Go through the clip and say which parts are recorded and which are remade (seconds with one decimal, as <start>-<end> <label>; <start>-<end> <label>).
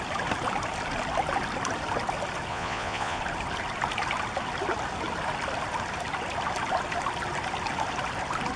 0.0-2.5 recorded; 2.5-3.2 remade; 3.2-8.6 recorded